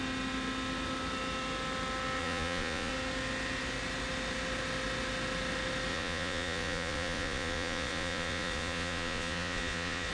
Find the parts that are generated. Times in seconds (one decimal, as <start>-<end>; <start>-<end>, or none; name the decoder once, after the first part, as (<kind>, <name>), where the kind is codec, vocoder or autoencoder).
2.2-2.9 (vocoder, Vocos); 5.9-10.1